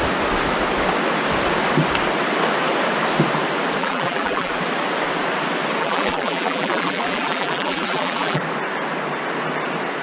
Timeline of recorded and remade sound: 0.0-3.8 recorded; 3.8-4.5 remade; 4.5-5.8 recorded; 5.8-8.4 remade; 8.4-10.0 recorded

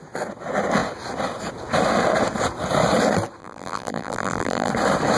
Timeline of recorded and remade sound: 0.0-3.4 recorded; 3.4-4.7 remade; 4.7-5.2 recorded